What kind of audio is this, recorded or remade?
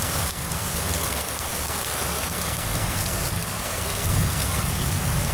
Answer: remade